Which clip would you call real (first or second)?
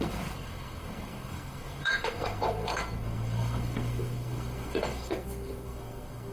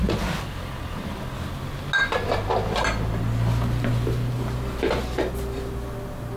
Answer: second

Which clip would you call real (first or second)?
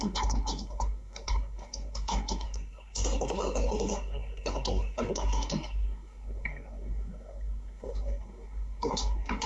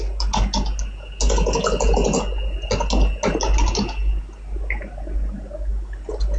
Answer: second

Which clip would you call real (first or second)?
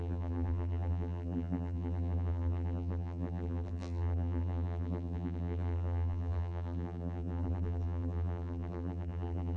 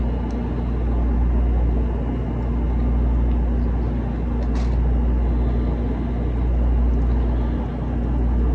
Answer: second